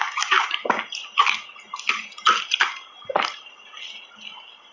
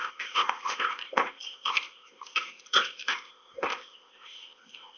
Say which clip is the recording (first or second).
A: first